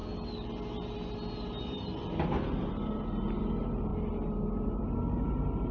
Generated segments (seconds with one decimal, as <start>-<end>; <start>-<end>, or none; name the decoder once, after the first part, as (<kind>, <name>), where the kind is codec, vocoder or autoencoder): none